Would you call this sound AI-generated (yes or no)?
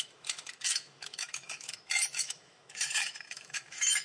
yes